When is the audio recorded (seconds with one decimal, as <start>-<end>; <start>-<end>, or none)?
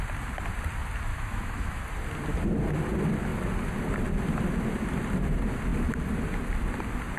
0.0-1.1; 1.8-7.2